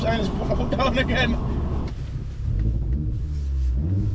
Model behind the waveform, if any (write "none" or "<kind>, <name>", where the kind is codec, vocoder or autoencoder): none